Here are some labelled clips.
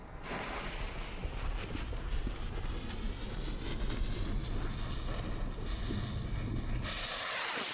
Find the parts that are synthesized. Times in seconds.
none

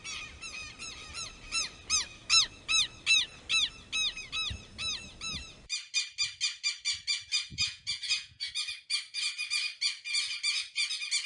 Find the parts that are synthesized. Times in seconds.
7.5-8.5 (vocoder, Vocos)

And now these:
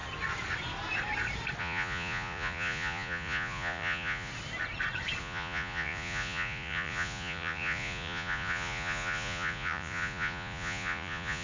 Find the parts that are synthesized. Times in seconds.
1.6-4.3 (vocoder, Vocos); 5.2-11.4